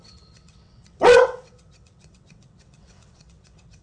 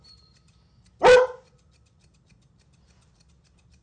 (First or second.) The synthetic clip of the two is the first